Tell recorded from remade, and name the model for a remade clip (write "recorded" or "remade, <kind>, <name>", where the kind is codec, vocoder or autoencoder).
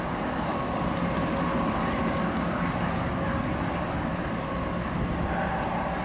recorded